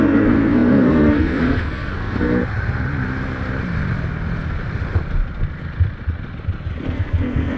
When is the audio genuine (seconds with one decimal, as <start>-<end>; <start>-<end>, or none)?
2.4-6.8